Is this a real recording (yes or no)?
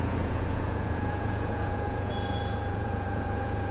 no